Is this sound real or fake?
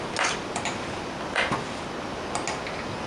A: real